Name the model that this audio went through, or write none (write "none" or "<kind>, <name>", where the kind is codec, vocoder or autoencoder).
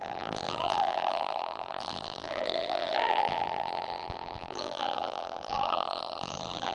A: vocoder, BigVGAN v2